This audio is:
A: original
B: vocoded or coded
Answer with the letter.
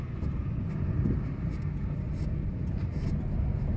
A